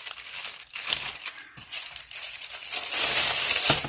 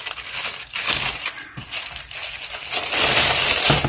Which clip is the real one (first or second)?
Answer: second